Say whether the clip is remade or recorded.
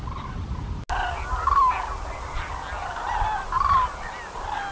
recorded